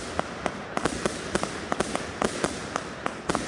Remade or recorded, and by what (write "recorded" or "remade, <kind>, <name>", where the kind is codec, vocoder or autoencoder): recorded